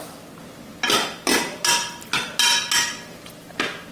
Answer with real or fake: real